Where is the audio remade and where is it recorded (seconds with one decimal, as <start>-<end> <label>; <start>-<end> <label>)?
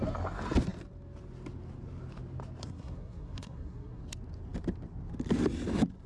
0.0-2.6 recorded; 2.6-4.0 remade; 4.0-6.1 recorded